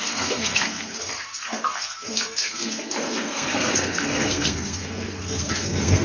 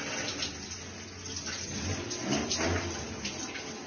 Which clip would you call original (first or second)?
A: second